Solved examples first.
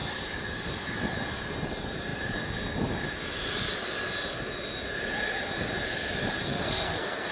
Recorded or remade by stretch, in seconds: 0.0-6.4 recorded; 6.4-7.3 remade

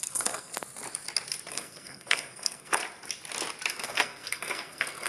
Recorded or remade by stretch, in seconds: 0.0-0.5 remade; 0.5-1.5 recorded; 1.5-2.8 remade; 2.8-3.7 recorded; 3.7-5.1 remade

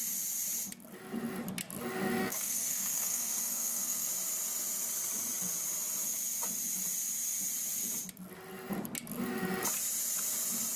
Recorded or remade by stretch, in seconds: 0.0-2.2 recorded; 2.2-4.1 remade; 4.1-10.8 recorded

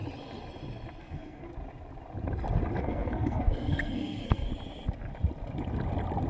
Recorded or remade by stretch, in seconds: 0.0-1.0 recorded; 1.0-1.5 remade; 1.5-2.8 recorded; 2.8-4.5 remade; 4.5-6.3 recorded

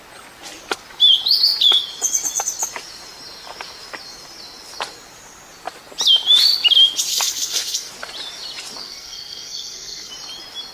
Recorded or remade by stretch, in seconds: 0.0-7.1 recorded; 7.1-7.9 remade; 7.9-8.8 recorded; 8.8-10.1 remade; 10.1-10.7 recorded

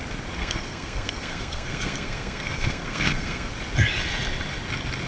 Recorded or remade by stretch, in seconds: 0.0-0.4 recorded; 0.4-3.5 remade; 3.5-5.1 recorded

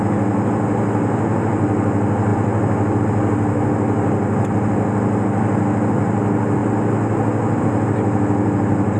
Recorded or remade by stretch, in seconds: 0.0-9.0 recorded

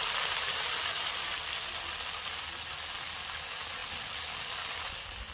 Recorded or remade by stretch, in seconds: 0.0-5.3 recorded